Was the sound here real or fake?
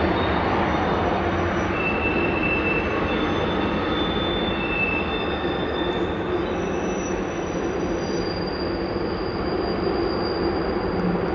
real